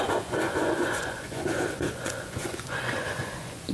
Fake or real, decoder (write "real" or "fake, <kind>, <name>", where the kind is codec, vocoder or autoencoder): fake, vocoder, Vocos